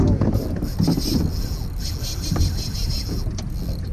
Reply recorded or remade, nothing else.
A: recorded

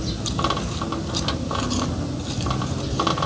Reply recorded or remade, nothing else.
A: recorded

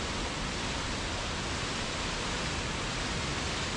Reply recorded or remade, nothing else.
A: recorded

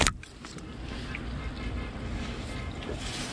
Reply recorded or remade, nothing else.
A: recorded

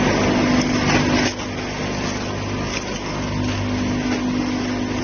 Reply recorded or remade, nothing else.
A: recorded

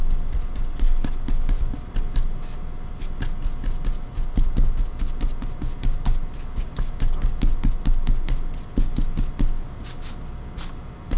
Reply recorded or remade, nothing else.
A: recorded